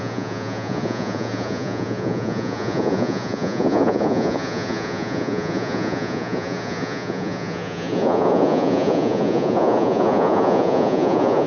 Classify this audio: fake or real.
fake